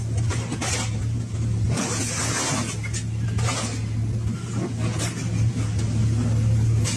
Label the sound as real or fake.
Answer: real